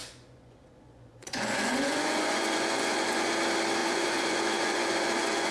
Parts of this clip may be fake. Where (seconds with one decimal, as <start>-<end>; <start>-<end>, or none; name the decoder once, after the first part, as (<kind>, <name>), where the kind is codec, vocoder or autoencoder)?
0.0-3.3 (vocoder, Vocos); 3.8-5.5